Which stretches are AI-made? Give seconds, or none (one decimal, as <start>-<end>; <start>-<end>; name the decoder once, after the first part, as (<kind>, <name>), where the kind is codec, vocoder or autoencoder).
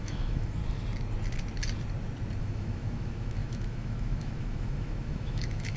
0.0-0.6 (autoencoder, DAC-VAE); 2.4-5.8